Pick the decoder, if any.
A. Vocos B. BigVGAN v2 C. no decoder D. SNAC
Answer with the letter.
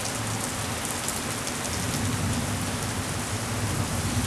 C